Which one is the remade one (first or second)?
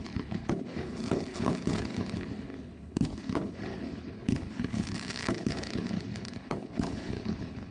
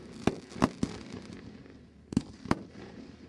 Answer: first